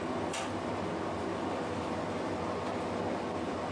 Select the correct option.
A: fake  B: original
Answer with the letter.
B